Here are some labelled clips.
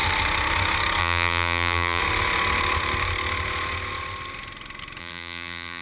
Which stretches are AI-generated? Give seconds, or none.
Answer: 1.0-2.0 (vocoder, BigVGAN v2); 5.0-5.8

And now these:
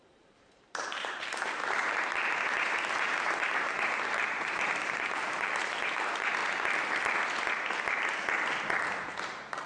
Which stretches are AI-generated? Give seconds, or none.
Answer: 0.0-6.4 (vocoder, BigVGAN v2)

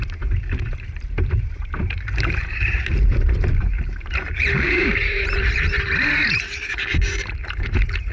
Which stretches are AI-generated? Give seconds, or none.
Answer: 0.0-8.1 (vocoder, BigVGAN v2)

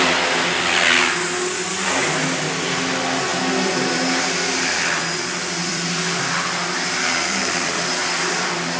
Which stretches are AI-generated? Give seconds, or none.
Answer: 3.3-4.5 (vocoder, BigVGAN v2); 5.6-6.2

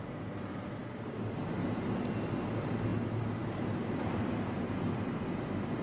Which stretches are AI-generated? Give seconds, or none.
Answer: 2.9-4.6 (vocoder, BigVGAN v2)